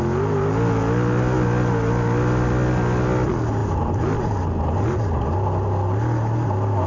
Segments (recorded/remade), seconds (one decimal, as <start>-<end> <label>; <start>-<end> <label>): 0.0-6.9 recorded